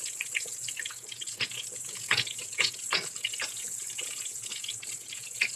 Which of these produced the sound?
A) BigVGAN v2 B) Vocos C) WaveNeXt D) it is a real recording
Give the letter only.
B